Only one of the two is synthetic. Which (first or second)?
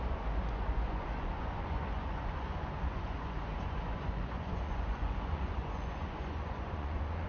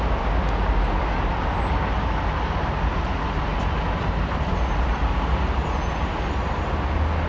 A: first